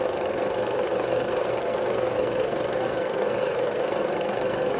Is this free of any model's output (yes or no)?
no